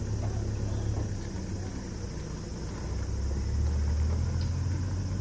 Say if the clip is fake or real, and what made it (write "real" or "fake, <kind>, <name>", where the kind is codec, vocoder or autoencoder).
real